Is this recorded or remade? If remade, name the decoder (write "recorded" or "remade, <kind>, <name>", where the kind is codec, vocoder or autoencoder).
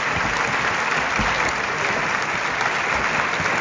recorded